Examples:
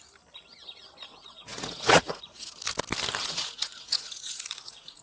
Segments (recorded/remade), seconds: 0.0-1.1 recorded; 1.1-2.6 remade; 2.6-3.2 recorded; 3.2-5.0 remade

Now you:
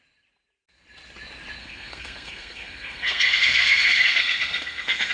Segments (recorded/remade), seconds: 0.0-1.6 recorded; 1.6-5.1 remade

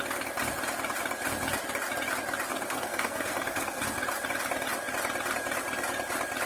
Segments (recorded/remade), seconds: 0.0-2.5 recorded; 2.5-3.8 remade; 3.8-6.5 recorded

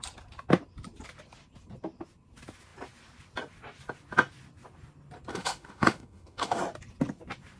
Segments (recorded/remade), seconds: 0.0-5.3 recorded; 5.3-6.6 remade; 6.6-7.6 recorded

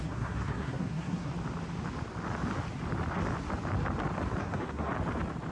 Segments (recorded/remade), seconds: 0.0-1.3 remade; 1.3-4.4 recorded; 4.4-4.9 remade; 4.9-5.5 recorded